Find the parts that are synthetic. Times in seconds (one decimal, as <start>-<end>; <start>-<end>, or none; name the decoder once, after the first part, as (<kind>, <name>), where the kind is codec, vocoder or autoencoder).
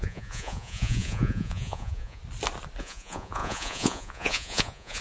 0.0-2.2 (vocoder, Vocos); 2.8-5.0